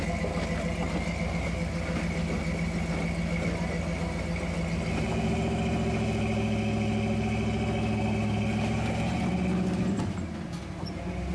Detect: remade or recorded recorded